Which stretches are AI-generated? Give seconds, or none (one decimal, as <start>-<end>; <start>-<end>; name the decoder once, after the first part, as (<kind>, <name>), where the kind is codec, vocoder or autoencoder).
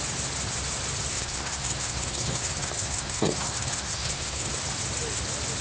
1.1-4.5 (codec, SNAC)